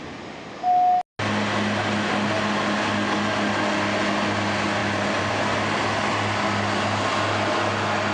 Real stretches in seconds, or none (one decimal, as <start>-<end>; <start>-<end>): 0.0-4.8; 5.3-8.1